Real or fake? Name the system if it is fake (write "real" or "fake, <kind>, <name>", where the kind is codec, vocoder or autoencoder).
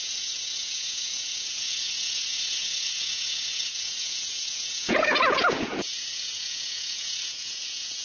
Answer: fake, vocoder, Vocos